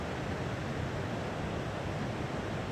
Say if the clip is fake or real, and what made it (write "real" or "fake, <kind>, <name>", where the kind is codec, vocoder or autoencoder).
real